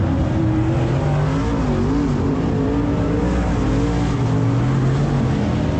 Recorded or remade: recorded